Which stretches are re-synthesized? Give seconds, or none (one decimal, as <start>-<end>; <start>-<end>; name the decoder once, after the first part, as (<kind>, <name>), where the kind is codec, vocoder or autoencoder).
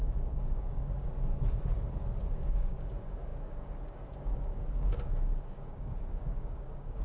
0.0-1.1 (codec, DAC); 2.2-7.0